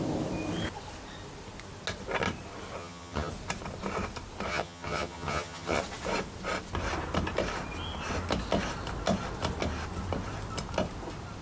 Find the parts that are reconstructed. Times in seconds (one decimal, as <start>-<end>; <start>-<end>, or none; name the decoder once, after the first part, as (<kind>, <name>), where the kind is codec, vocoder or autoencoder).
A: 2.8-3.3 (vocoder, HiFi-GAN); 4.5-5.8